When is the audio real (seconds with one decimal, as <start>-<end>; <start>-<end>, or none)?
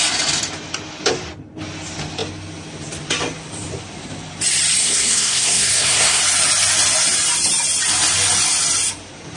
0.0-4.8; 6.2-9.4